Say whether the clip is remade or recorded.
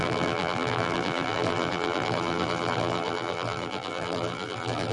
remade